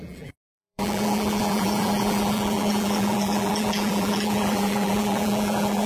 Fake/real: fake